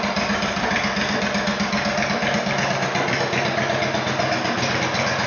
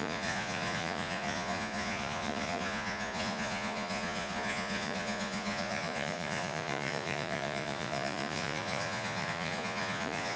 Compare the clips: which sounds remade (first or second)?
second